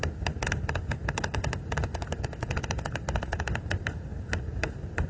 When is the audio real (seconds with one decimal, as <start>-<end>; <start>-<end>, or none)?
0.0-1.0; 3.3-4.1